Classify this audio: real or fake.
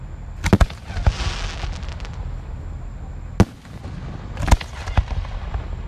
real